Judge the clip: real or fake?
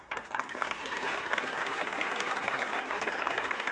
fake